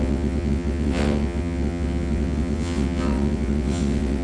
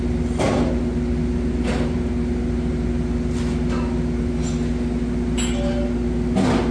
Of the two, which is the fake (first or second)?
first